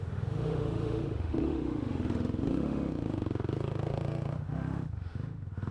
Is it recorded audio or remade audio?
remade